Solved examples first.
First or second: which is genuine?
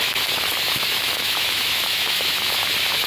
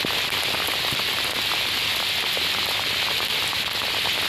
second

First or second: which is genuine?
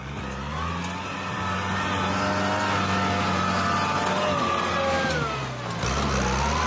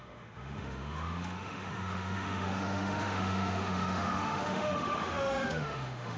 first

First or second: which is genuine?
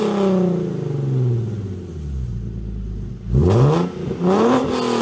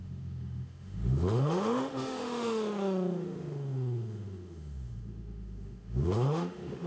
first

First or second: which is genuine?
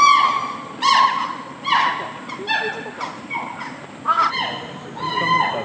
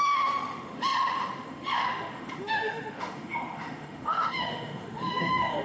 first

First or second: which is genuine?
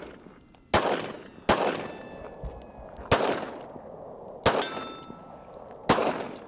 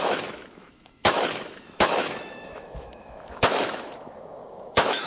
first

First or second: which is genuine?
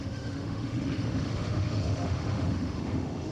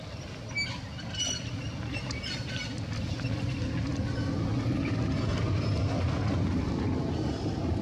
second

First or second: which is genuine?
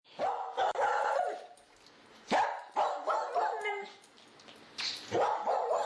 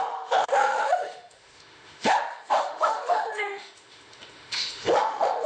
first